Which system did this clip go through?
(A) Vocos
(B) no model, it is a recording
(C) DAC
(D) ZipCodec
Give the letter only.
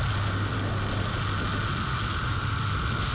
B